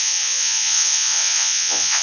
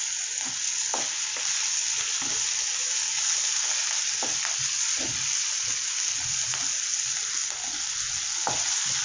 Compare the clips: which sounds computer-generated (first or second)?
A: first